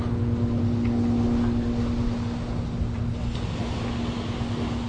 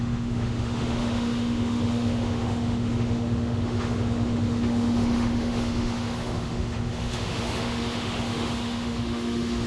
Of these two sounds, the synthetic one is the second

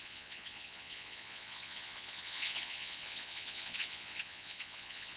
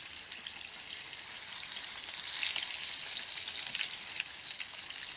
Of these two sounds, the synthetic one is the first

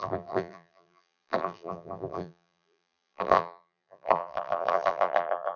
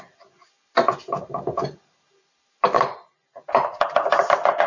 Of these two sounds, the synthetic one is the first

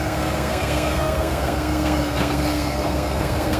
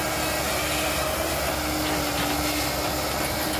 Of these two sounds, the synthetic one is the first